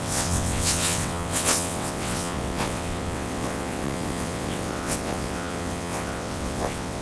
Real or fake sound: fake